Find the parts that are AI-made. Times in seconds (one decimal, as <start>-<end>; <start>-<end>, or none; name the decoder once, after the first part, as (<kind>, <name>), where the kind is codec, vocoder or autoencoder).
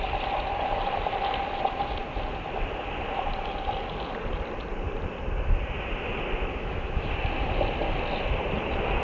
6.5-7.1 (autoencoder, DAC-VAE)